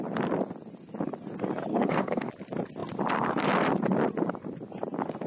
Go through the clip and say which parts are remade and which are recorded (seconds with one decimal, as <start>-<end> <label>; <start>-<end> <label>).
0.0-1.7 recorded; 1.7-2.3 remade; 2.3-5.3 recorded